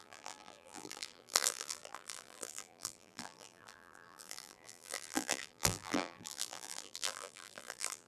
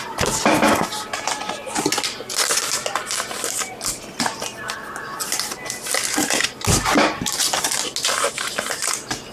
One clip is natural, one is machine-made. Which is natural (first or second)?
second